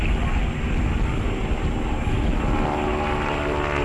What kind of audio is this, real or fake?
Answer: real